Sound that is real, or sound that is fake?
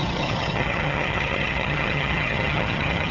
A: fake